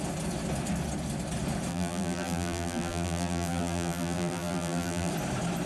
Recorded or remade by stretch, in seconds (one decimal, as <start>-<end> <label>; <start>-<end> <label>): 0.0-1.7 recorded; 1.7-5.1 remade; 5.1-5.7 recorded